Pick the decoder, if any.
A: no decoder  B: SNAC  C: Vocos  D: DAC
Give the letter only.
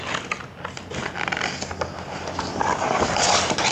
A